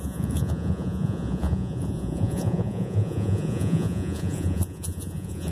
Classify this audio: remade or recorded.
remade